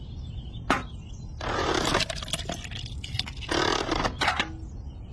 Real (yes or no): yes